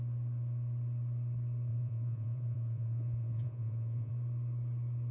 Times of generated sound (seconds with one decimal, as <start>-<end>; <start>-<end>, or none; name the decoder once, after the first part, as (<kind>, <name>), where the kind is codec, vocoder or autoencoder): 1.7-4.1 (vocoder, Vocos)